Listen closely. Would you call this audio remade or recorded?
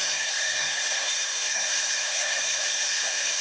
remade